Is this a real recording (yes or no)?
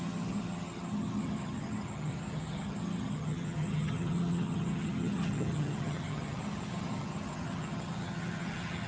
no